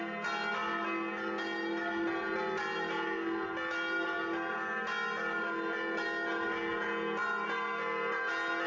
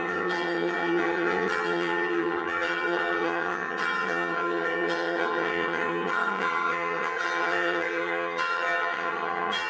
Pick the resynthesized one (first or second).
second